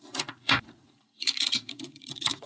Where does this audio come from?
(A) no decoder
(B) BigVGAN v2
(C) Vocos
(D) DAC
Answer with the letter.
C